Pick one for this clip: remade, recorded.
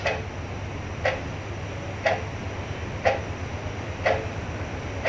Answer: recorded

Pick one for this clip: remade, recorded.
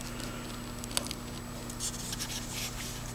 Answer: recorded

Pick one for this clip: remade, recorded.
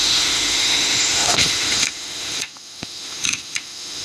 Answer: remade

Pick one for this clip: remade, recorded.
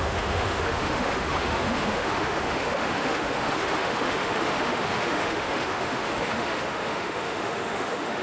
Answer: remade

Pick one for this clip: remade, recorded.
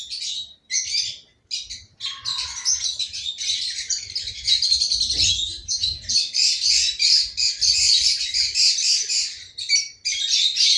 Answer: recorded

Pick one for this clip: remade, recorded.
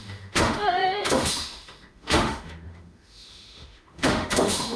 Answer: remade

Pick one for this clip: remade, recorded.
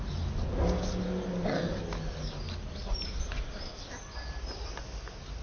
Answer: recorded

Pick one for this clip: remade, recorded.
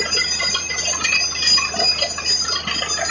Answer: recorded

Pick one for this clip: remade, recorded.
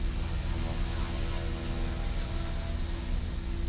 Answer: recorded